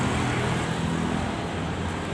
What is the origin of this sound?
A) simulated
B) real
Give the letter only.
B